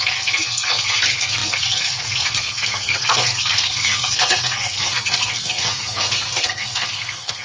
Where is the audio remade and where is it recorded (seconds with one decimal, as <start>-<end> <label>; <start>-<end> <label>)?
0.0-7.4 remade